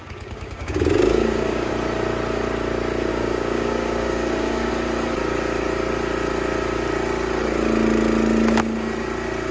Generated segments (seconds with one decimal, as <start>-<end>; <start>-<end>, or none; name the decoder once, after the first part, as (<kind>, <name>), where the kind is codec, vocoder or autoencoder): 0.0-1.7 (codec, DAC); 3.1-4.7